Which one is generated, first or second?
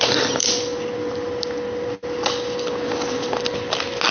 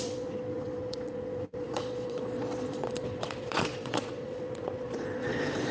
second